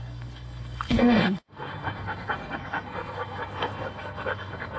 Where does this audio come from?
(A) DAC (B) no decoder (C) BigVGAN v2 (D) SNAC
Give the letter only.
D